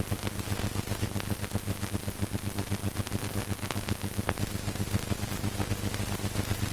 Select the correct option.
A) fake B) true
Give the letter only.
B